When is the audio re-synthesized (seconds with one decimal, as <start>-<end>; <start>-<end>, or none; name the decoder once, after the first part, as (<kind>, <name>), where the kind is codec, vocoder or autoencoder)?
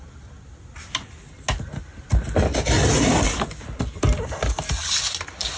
none